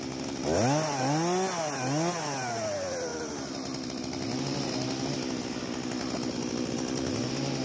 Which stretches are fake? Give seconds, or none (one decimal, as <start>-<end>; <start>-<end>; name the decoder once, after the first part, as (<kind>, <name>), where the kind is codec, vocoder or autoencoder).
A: none